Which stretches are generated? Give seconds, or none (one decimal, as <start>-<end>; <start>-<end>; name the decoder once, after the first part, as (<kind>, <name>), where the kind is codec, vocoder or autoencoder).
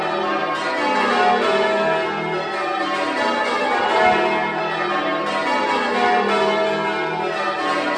none